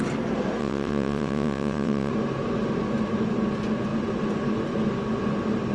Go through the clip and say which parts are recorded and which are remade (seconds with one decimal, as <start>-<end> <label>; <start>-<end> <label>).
0.0-0.6 recorded; 0.6-2.1 remade; 2.1-5.7 recorded